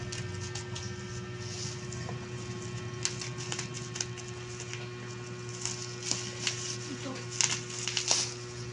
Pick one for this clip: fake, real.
real